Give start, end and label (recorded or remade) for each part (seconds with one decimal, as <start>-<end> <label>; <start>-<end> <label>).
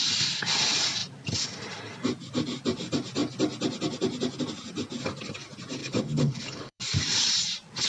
0.0-5.8 recorded; 5.8-6.8 remade; 6.8-7.9 recorded